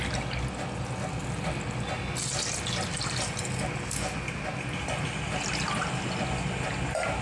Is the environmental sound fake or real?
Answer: real